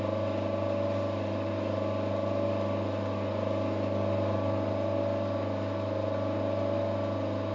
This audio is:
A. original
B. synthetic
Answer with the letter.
A